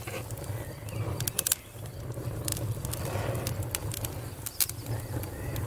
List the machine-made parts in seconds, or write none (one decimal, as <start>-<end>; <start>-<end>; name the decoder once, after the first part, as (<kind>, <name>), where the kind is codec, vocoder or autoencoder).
none